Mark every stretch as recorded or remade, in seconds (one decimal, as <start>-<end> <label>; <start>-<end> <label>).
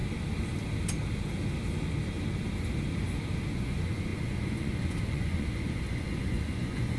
0.0-3.5 recorded; 3.5-7.0 remade